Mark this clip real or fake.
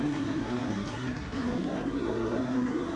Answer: fake